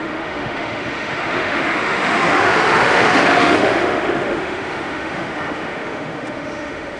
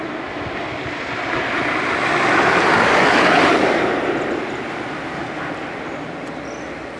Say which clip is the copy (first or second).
first